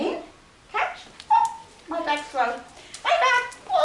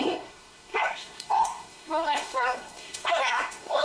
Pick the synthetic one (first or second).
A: second